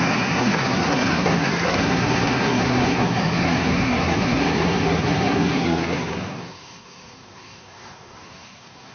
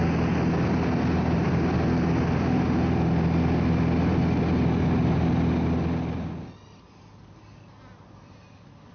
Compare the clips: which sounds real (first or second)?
second